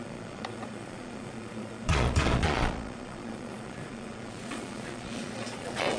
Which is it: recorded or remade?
remade